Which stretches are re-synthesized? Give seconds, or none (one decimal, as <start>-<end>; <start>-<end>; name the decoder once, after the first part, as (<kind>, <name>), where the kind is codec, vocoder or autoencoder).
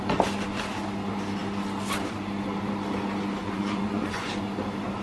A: 3.4-4.3 (vocoder, Vocos)